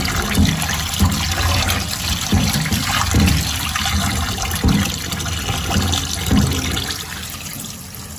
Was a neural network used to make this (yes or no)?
no